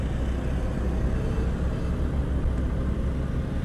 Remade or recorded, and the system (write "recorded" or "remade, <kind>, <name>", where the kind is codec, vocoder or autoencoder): recorded